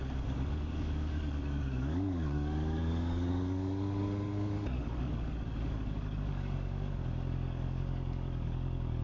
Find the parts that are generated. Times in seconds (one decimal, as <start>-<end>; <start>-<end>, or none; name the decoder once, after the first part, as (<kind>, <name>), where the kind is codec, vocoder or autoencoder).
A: 0.0-9.0 (codec, DAC)